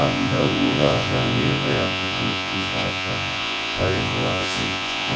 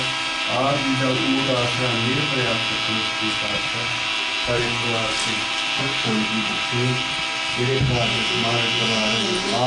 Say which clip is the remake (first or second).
first